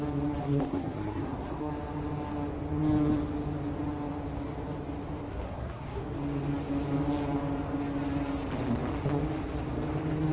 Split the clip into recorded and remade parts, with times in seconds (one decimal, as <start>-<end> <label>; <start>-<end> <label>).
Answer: 0.0-0.4 recorded; 0.4-1.7 remade; 1.7-5.3 recorded; 5.3-6.0 remade; 6.0-10.3 recorded